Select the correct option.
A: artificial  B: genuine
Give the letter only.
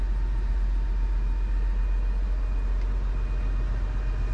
B